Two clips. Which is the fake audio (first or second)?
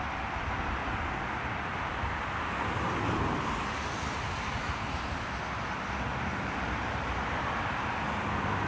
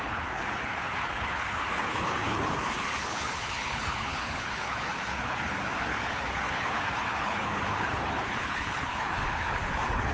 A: second